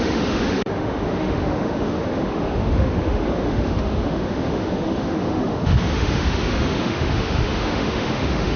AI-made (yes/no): yes